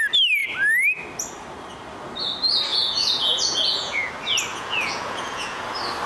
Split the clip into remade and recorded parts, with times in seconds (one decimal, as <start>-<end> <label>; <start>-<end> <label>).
0.0-2.7 recorded; 2.7-4.1 remade; 4.1-4.5 recorded; 4.5-5.6 remade; 5.6-6.1 recorded